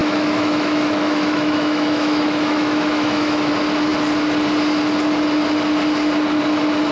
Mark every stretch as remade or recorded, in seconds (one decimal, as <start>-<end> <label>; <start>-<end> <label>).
0.0-3.5 remade; 3.5-6.9 recorded